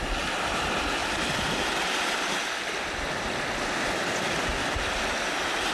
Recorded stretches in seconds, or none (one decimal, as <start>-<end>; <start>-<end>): 0.0-5.7